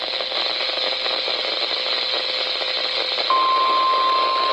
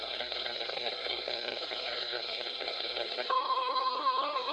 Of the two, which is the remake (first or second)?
second